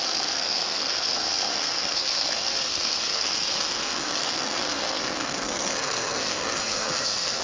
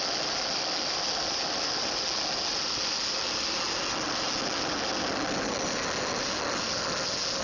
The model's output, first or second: first